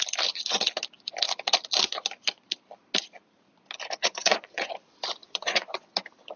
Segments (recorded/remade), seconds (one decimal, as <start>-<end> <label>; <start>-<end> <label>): 0.0-4.0 recorded; 4.0-4.7 remade; 4.7-5.2 recorded; 5.2-5.9 remade; 5.9-6.4 recorded